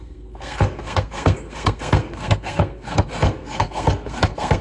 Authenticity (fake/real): fake